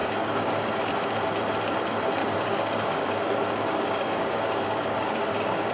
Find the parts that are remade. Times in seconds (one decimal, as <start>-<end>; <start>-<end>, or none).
0.0-0.9; 2.2-5.7